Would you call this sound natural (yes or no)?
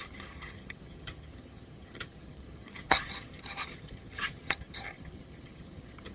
no